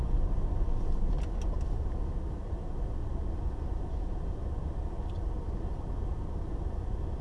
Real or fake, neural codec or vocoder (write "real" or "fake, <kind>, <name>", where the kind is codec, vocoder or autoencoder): real